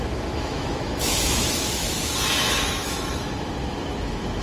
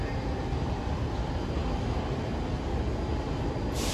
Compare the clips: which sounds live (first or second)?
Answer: second